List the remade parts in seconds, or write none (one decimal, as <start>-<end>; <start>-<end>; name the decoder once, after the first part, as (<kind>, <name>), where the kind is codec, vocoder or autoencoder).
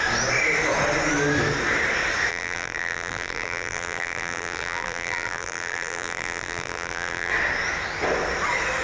2.3-7.3 (vocoder, BigVGAN v2)